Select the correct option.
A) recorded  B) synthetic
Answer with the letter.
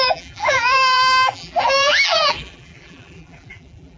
B